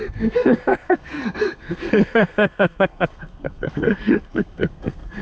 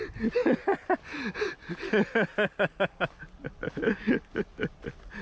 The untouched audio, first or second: second